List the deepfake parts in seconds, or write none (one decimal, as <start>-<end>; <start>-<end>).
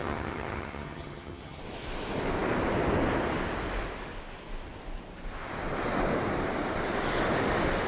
0.0-1.6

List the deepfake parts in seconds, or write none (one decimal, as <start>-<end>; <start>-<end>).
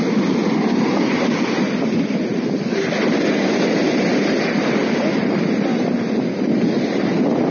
none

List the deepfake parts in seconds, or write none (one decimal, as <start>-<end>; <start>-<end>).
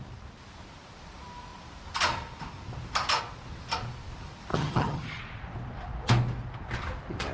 4.5-5.2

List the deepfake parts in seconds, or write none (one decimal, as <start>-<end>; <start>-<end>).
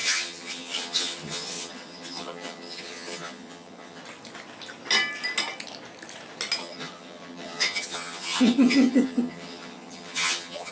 0.0-4.0; 6.6-10.7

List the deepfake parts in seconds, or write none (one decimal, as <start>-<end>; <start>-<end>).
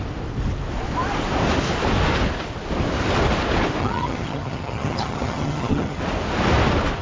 3.8-6.0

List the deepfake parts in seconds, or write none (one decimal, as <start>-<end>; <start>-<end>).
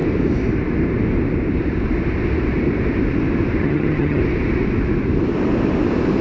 3.6-4.2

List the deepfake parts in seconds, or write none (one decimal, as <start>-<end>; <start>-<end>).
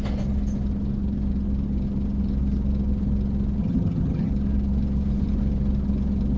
3.6-4.3